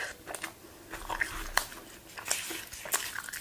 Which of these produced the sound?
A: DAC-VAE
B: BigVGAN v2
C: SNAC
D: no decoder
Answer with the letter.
D